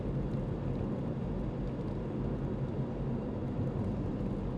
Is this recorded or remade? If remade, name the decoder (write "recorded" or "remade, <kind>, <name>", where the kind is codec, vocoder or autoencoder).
recorded